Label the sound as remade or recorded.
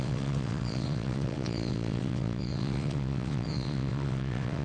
remade